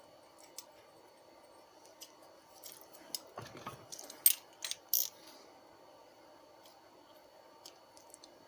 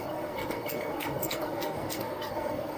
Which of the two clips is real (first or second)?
first